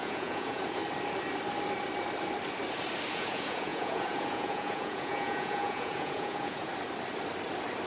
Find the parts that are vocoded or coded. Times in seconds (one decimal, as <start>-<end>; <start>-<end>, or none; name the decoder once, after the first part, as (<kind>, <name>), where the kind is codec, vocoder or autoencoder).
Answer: 0.0-0.8 (vocoder, Vocos); 3.1-6.7